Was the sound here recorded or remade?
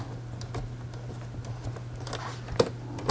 recorded